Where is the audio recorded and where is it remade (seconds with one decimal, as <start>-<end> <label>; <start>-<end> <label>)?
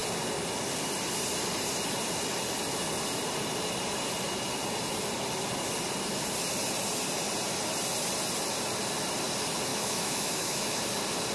0.0-9.7 recorded; 9.7-10.8 remade; 10.8-11.3 recorded